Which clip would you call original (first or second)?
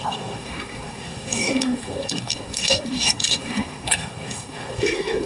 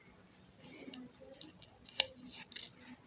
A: second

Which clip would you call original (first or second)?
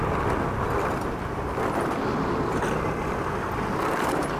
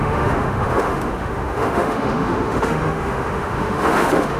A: first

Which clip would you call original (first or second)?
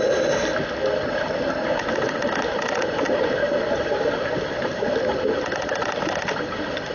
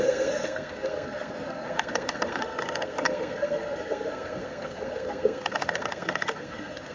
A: first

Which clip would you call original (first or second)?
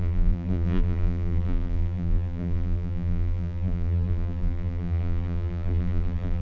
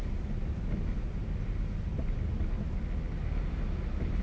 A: second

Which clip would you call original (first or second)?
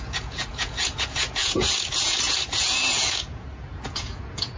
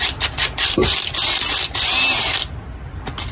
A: second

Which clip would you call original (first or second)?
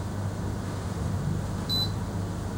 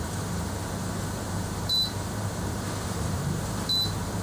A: first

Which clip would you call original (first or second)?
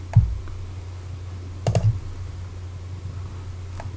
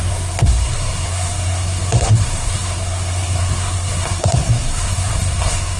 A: first